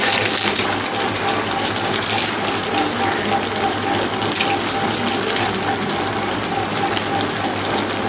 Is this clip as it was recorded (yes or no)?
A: yes